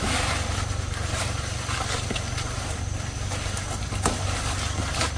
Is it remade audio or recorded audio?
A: recorded